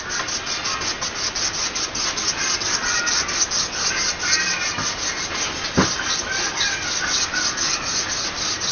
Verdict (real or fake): real